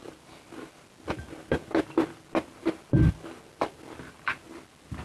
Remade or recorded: recorded